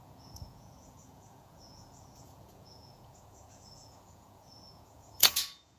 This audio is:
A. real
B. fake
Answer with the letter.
B